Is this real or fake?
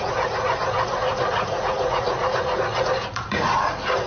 fake